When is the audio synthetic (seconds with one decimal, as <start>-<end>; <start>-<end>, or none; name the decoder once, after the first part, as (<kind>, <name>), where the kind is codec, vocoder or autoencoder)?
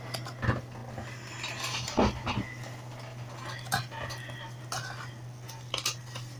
none